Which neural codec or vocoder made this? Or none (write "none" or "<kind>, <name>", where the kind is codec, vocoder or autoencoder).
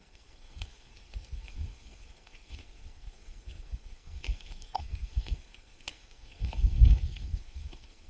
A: codec, SNAC